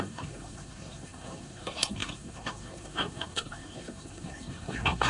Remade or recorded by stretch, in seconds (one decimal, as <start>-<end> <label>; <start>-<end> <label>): 0.0-5.1 remade